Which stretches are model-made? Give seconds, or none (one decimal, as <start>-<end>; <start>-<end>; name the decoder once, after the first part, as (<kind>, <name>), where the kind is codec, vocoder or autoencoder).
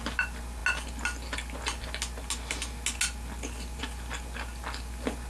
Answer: none